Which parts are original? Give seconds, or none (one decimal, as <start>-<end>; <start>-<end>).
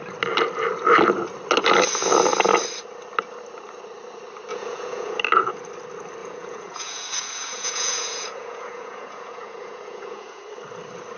0.0-4.5; 5.2-6.2; 10.4-11.2